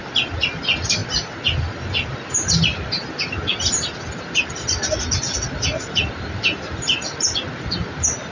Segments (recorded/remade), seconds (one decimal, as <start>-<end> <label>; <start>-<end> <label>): 0.0-8.3 recorded